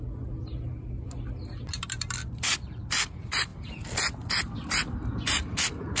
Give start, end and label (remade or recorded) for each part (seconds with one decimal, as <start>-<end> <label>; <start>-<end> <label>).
0.0-6.0 recorded